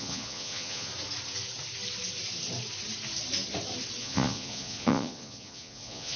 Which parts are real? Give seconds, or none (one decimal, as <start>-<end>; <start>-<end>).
0.9-4.0